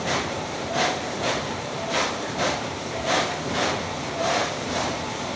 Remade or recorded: remade